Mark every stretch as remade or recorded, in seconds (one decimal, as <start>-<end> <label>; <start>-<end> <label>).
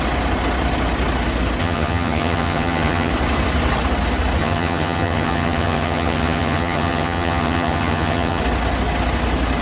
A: 0.0-1.6 recorded; 1.6-3.1 remade; 3.1-4.4 recorded; 4.4-8.4 remade; 8.4-9.6 recorded